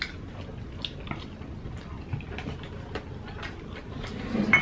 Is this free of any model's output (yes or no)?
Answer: yes